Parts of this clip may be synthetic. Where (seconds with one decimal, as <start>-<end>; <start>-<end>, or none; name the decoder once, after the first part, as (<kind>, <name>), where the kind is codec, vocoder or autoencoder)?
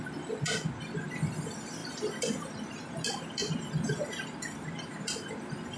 none